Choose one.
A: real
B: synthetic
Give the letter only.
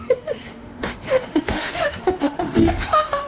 B